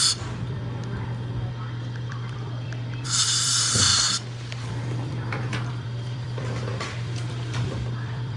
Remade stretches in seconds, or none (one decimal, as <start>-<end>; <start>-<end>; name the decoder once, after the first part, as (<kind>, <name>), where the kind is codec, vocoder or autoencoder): 0.0-0.6 (vocoder, BigVGAN v2); 1.8-3.9; 4.7-8.4